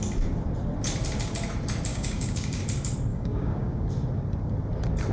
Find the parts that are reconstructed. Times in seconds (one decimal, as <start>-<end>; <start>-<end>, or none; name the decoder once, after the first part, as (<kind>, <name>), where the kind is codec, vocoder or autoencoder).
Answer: 1.9-2.6 (codec, DAC); 3.1-3.9